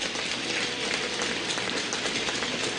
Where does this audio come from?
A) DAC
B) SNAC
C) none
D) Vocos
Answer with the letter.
C